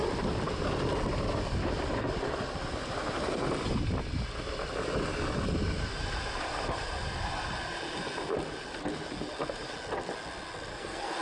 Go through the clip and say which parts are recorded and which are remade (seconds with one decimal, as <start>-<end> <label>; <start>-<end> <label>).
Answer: 0.0-10.7 recorded; 10.7-11.2 remade